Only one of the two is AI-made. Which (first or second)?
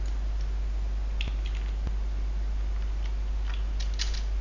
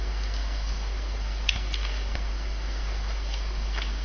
second